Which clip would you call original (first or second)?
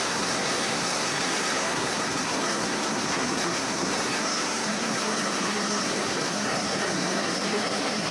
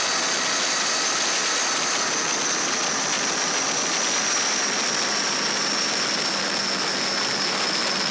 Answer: second